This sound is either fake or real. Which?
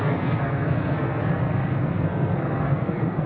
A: fake